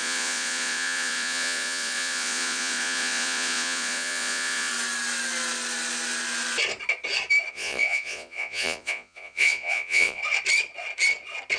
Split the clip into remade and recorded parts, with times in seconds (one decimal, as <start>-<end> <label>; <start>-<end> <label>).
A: 0.0-4.7 remade; 4.7-7.5 recorded; 7.5-10.2 remade; 10.2-11.6 recorded